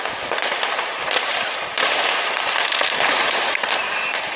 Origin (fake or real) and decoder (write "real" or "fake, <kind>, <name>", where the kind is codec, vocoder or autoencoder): real